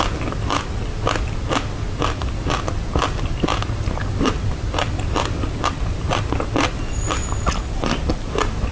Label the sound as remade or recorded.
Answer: recorded